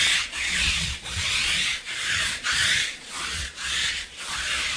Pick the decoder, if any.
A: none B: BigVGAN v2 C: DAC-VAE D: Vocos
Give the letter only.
D